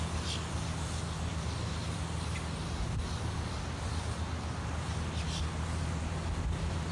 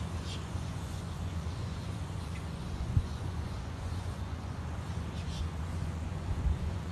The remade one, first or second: second